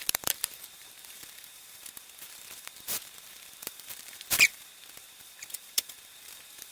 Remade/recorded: remade